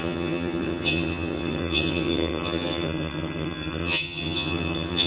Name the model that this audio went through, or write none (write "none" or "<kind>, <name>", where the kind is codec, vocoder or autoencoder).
vocoder, HiFi-GAN